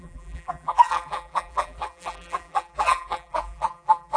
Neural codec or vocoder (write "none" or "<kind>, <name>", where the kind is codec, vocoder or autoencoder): vocoder, BigVGAN v2